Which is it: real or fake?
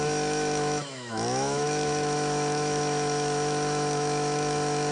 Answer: fake